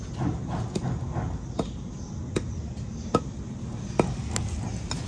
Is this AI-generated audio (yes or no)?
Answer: no